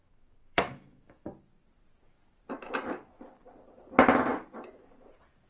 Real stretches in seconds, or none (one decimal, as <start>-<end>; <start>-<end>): 1.3-5.5